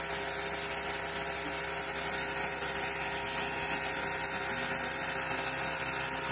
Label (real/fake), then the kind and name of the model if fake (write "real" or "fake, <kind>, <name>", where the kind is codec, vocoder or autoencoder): real